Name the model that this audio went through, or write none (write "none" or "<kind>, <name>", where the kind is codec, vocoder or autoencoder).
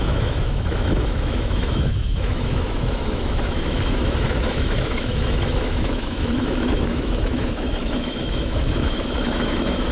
autoencoder, DAC-VAE